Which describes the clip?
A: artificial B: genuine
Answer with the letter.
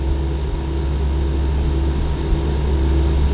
B